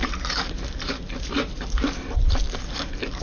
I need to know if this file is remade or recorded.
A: remade